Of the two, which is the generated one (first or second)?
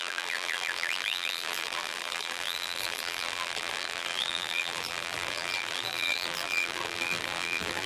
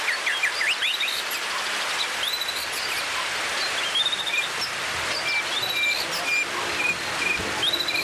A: first